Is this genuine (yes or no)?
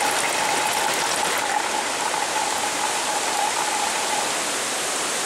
yes